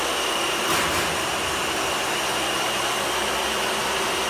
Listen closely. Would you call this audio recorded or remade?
remade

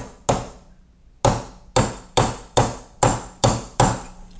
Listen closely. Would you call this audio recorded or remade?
recorded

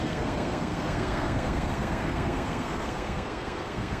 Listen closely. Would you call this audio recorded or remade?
remade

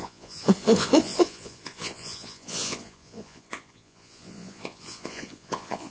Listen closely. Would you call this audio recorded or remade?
remade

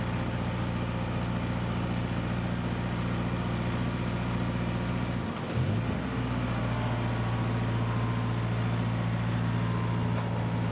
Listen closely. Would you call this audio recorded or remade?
recorded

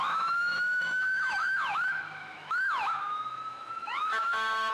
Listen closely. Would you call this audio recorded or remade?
remade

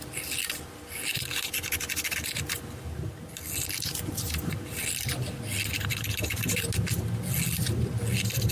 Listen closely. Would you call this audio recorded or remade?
recorded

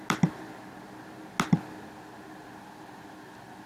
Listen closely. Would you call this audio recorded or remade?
recorded